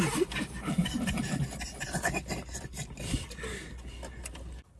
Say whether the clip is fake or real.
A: real